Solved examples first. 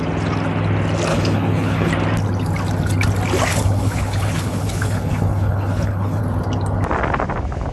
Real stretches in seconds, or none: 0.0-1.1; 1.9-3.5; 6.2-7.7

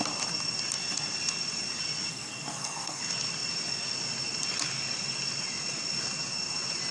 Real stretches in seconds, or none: 0.0-2.1; 3.0-6.9

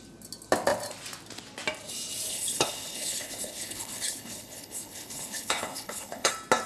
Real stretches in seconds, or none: 0.0-2.3; 6.3-6.7

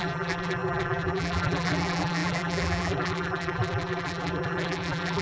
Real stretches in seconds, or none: none

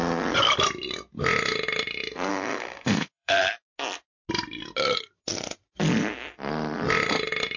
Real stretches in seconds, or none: 0.0-2.3; 3.3-7.6

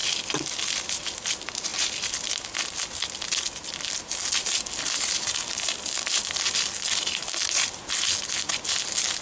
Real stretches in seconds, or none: 0.0-9.2

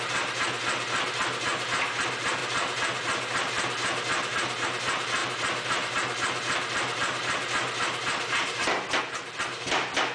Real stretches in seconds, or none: 0.0-10.1

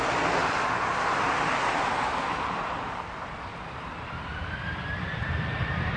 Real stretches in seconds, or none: 0.0-0.4; 1.3-2.3